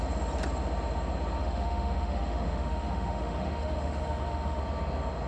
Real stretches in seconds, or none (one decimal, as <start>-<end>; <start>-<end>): 0.0-1.4; 4.6-5.3